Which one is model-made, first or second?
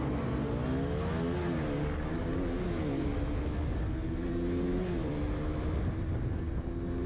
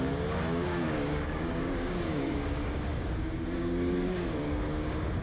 second